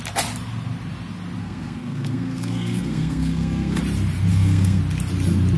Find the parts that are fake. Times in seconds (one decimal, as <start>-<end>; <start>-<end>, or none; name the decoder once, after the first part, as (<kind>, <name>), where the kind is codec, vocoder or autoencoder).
1.4-3.8 (codec, SNAC); 4.3-4.8